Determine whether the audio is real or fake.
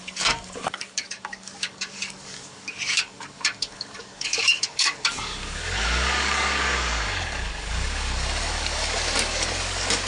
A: fake